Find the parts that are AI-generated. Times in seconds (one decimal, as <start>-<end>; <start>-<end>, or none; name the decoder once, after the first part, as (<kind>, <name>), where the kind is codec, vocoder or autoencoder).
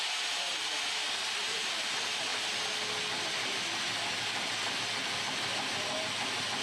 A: none